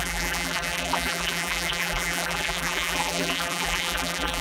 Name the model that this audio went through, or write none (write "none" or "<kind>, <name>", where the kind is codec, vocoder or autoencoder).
vocoder, BigVGAN v2